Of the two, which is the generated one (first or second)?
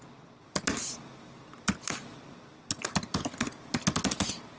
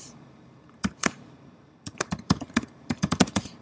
second